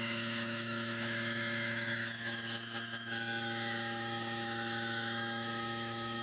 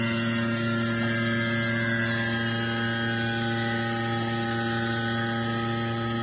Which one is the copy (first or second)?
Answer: first